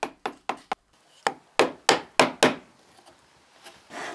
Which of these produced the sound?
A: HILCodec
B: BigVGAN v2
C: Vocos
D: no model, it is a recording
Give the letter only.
D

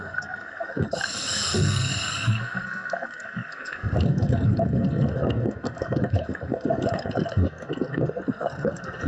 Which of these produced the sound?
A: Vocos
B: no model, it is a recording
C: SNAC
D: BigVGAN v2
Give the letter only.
C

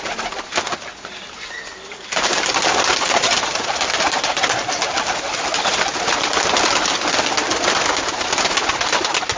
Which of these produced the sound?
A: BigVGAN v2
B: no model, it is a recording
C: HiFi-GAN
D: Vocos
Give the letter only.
B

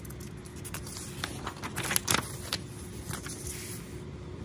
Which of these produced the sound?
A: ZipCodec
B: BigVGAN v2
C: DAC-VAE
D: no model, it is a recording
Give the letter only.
D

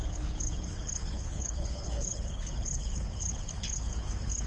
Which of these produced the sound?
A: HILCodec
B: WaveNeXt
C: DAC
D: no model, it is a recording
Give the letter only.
A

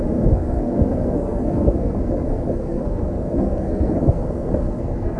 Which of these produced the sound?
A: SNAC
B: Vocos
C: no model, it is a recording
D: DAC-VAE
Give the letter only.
A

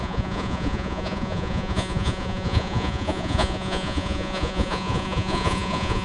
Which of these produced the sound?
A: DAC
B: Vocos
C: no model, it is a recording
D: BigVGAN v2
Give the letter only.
B